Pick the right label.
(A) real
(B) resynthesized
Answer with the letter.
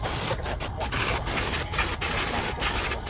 A